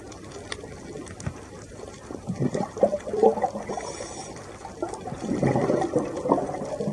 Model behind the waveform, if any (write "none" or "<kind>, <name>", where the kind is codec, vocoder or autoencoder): none